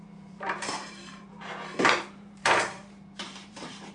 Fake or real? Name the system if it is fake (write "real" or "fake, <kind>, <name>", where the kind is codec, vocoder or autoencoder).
fake, vocoder, BigVGAN v2